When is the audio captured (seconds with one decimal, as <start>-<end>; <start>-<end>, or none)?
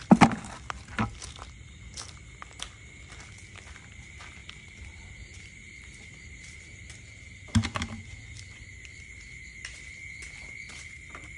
0.0-4.4; 7.5-11.4